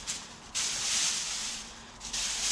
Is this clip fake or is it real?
real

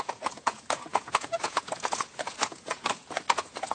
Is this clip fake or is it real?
fake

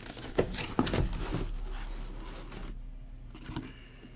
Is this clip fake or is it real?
real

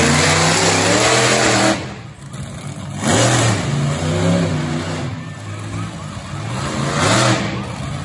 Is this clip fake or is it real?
real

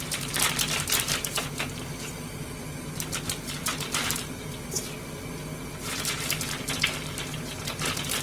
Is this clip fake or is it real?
real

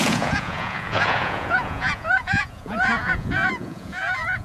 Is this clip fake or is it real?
fake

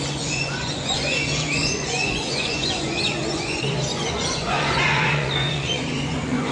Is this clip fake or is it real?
fake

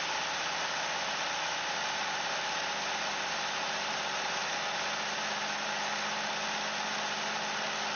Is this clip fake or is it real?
real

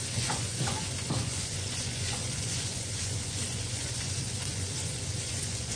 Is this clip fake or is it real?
fake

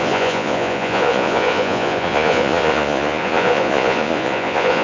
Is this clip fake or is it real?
fake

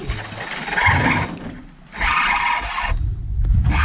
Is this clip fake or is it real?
real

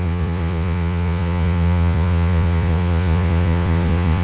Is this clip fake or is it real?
fake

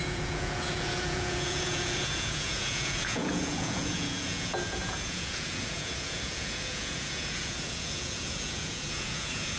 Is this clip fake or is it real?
fake